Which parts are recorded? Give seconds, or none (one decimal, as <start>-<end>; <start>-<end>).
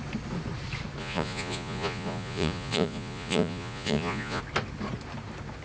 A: 0.0-1.0; 4.4-5.6